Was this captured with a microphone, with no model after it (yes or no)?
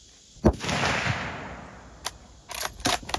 yes